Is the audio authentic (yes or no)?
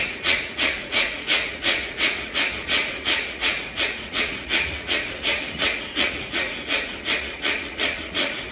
no